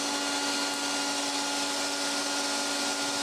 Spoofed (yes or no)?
no